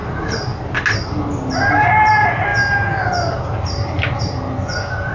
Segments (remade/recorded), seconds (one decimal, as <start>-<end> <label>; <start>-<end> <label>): 0.0-5.1 recorded